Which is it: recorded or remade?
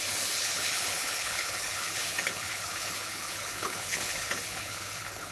remade